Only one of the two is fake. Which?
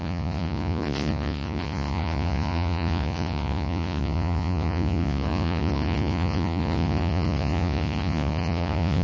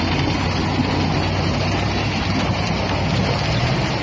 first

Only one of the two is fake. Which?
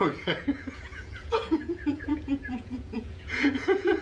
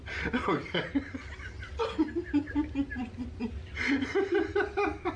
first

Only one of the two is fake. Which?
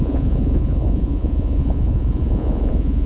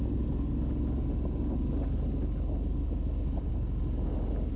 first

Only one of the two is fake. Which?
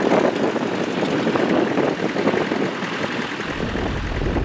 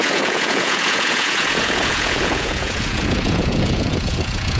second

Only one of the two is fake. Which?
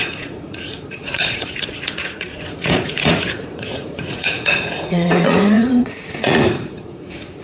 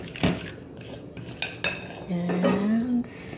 first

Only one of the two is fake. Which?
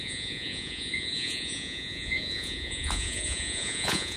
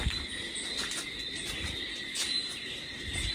first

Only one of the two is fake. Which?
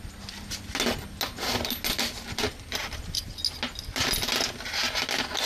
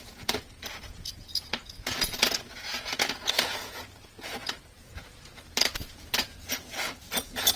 second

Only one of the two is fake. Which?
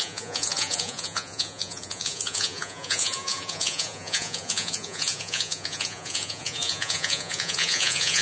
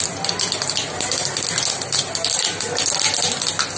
first